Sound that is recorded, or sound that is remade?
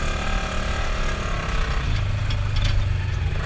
recorded